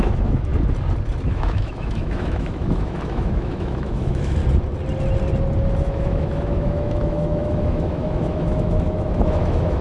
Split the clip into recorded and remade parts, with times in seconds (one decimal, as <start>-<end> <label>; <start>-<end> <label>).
0.0-0.5 remade; 0.5-1.3 recorded; 1.3-4.4 remade; 4.4-5.8 recorded; 5.8-9.8 remade